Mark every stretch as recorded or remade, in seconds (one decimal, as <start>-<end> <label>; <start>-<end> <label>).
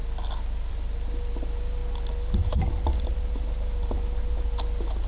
0.0-5.1 recorded